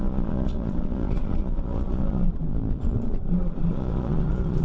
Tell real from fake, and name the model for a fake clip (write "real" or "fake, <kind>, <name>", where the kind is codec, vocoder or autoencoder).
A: fake, vocoder, Vocos